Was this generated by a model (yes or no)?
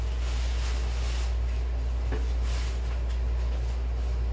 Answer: no